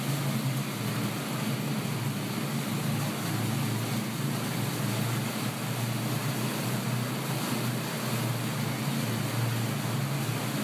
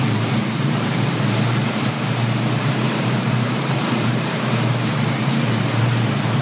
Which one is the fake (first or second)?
second